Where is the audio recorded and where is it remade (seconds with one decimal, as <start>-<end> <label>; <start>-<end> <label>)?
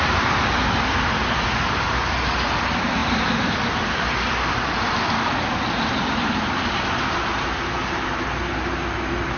0.0-9.4 recorded